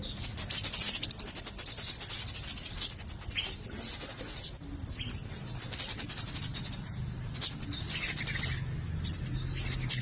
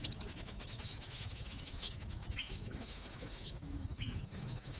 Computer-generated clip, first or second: second